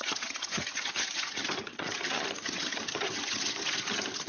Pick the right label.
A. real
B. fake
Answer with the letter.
B